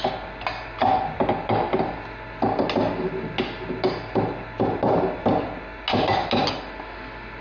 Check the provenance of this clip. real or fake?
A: real